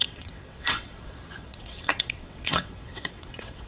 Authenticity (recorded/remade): remade